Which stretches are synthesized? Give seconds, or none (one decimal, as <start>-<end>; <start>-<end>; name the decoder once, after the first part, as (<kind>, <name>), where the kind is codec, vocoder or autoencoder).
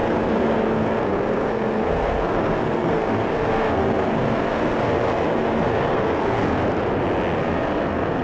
0.0-6.6 (codec, SNAC); 7.4-8.2